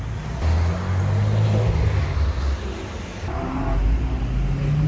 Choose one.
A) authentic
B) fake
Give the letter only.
A